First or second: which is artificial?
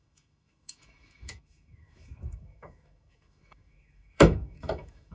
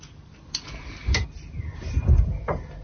first